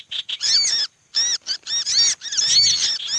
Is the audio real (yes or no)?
yes